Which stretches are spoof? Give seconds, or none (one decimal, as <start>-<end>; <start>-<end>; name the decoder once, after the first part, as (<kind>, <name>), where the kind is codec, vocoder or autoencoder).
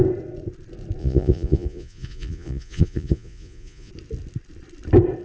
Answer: 1.0-3.9 (vocoder, Vocos)